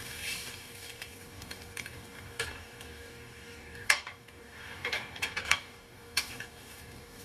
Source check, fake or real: fake